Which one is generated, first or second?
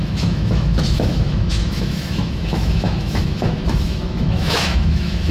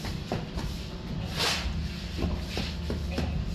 first